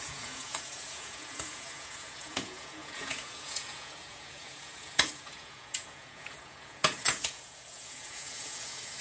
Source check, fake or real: fake